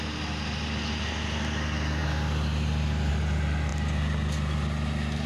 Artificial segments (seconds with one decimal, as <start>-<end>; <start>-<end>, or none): none